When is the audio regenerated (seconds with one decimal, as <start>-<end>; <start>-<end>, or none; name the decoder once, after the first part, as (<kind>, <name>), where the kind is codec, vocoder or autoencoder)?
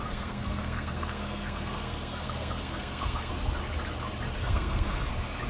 0.0-3.3 (codec, SNAC); 4.4-5.1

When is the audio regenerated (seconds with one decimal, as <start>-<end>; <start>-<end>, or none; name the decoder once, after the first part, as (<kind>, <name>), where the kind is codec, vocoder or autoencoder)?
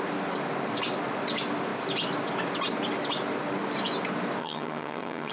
4.4-5.3 (vocoder, HiFi-GAN)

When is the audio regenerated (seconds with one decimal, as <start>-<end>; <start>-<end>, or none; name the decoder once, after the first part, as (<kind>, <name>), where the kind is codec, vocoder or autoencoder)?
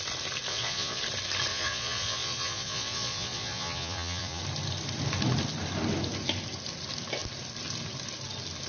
0.5-1.0 (vocoder, Vocos); 1.5-4.4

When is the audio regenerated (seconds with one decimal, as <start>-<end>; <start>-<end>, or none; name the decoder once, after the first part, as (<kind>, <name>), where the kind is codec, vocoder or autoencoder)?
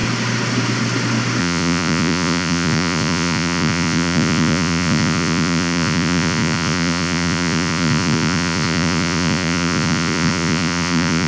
1.4-11.3 (vocoder, Vocos)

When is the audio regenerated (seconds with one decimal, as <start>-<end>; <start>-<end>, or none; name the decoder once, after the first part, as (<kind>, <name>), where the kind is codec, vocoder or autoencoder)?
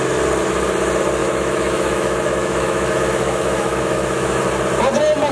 1.2-4.4 (autoencoder, DAC-VAE)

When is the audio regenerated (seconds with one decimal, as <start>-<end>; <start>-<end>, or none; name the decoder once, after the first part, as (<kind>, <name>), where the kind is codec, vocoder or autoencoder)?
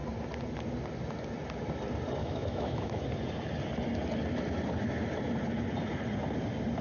2.2-3.0 (autoencoder, DAC-VAE)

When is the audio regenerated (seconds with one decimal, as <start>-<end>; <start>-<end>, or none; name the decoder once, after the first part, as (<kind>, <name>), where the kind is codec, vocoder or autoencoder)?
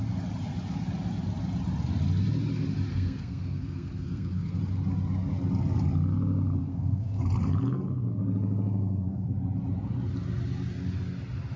2.9-4.6 (codec, SNAC); 6.6-7.2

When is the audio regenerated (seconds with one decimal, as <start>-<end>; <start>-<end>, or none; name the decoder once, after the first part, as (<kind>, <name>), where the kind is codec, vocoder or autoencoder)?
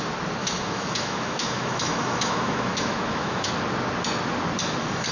0.4-3.5 (autoencoder, DAC-VAE)